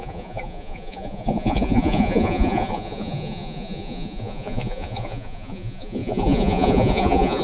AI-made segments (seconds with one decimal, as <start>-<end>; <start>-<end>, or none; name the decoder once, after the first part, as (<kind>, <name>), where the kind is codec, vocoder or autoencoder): 0.0-7.4 (vocoder, Vocos)